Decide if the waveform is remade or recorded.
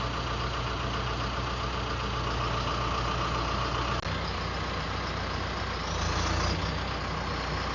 recorded